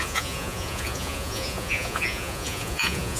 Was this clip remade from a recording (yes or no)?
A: yes